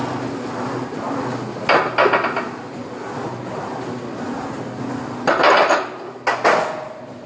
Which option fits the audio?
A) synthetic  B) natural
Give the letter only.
B